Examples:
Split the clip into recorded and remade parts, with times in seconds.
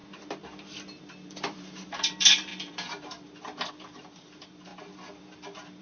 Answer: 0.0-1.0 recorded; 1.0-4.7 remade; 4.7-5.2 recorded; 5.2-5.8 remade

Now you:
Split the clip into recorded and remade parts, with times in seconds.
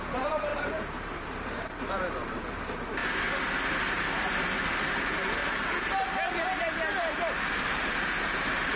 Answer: 0.0-3.0 remade; 3.0-4.7 recorded; 4.7-5.4 remade; 5.4-7.5 recorded; 7.5-8.8 remade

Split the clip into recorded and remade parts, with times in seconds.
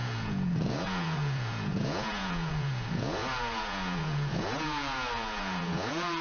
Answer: 0.0-6.2 remade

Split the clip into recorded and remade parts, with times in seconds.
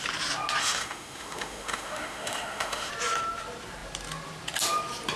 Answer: 0.0-0.6 recorded; 0.6-2.9 remade; 2.9-5.2 recorded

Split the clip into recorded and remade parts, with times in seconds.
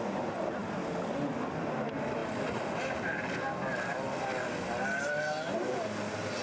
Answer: 0.0-6.4 recorded